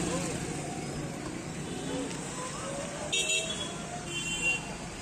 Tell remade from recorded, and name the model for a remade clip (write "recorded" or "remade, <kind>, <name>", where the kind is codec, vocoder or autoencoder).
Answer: recorded